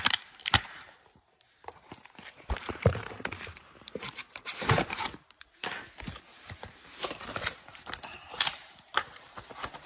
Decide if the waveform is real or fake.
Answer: fake